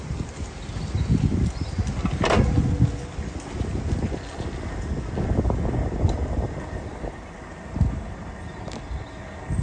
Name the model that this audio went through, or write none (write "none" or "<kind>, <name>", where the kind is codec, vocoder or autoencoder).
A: none